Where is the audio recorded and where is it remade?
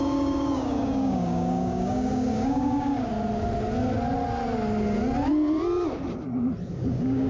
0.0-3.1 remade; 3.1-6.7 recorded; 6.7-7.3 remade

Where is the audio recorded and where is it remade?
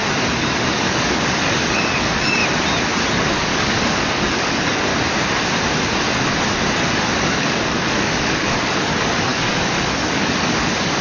0.0-0.7 recorded; 0.7-2.4 remade; 2.4-3.1 recorded; 3.1-4.9 remade; 4.9-6.9 recorded; 6.9-11.0 remade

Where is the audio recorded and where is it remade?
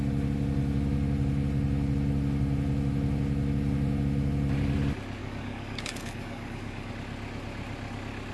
0.0-5.2 recorded; 5.2-6.9 remade; 6.9-8.3 recorded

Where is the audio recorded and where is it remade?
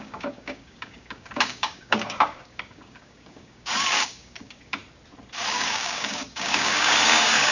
0.0-4.8 remade; 4.8-5.5 recorded; 5.5-7.5 remade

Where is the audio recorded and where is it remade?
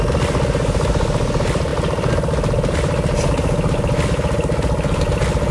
0.0-5.5 recorded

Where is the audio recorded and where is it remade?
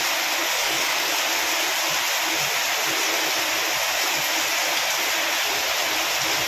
0.0-0.4 recorded; 0.4-1.1 remade; 1.1-6.5 recorded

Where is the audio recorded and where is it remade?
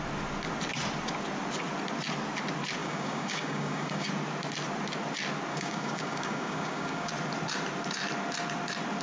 0.0-2.8 recorded; 2.8-4.1 remade; 4.1-5.5 recorded; 5.5-7.1 remade; 7.1-9.0 recorded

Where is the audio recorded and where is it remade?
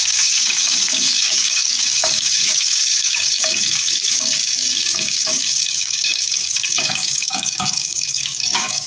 0.0-8.9 remade